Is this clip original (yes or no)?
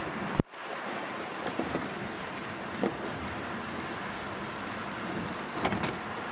yes